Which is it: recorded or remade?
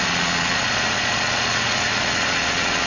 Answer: remade